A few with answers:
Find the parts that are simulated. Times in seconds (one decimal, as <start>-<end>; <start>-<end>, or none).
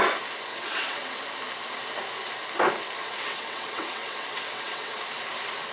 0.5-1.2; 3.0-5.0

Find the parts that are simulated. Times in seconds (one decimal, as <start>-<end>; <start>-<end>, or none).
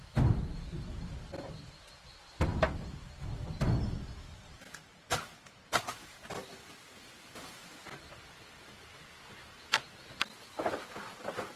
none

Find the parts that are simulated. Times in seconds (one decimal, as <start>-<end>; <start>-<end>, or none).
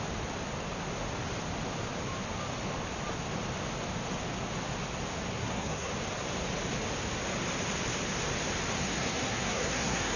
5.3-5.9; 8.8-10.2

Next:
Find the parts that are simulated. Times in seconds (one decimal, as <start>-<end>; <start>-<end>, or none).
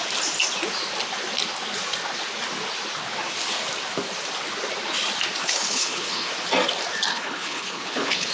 5.4-6.3; 7.1-8.3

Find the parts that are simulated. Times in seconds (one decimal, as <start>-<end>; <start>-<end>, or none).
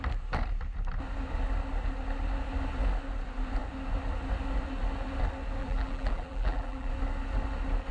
5.6-6.9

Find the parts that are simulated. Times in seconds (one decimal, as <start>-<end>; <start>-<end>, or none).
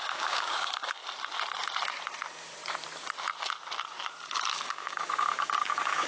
0.0-1.0; 4.5-6.1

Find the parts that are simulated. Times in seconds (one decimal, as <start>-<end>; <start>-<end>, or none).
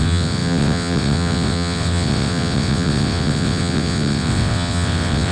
0.0-5.3